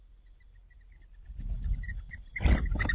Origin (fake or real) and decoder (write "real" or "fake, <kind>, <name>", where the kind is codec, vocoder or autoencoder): real